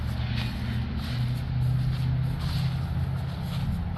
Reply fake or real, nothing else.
real